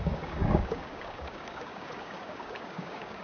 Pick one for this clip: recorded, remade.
remade